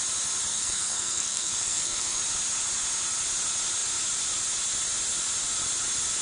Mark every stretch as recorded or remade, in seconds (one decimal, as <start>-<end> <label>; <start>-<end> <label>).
0.0-0.5 recorded; 0.5-2.2 remade; 2.2-6.2 recorded